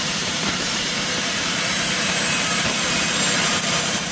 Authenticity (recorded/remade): remade